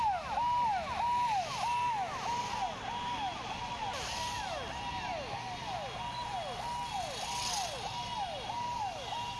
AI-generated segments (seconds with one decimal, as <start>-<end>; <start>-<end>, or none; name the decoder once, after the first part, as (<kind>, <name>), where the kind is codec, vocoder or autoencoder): none